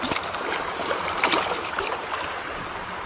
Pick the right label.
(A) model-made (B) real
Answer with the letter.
B